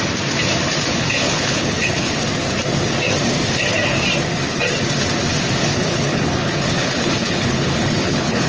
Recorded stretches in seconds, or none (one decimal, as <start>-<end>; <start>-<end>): 0.0-0.9; 2.2-5.6